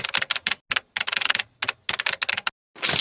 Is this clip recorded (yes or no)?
yes